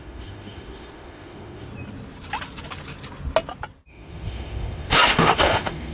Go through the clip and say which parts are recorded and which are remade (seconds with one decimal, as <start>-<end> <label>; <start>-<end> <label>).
0.0-1.7 remade; 1.7-3.9 recorded; 3.9-5.9 remade